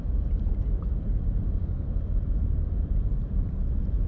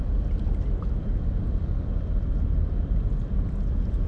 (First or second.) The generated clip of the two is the first